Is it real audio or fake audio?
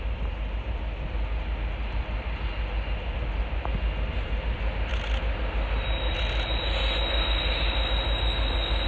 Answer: real